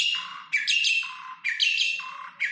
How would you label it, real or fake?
real